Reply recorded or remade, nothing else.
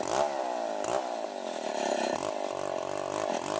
recorded